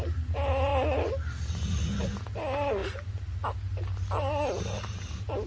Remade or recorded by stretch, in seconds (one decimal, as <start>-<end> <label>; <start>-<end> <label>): 0.0-5.5 recorded